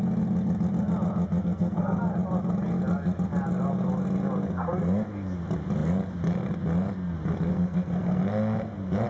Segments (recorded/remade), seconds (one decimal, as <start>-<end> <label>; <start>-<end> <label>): 0.0-1.4 recorded; 1.4-2.0 remade; 2.0-7.5 recorded; 7.5-8.2 remade; 8.2-9.1 recorded